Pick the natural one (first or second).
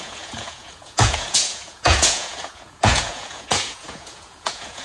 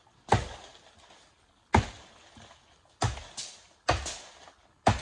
second